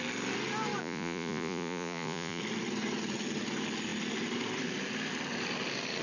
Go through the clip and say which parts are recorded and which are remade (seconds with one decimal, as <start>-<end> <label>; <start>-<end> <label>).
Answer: 0.0-0.8 recorded; 0.8-2.4 remade; 2.4-6.0 recorded